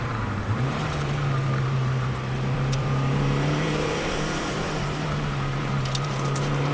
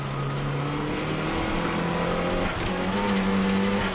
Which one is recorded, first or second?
second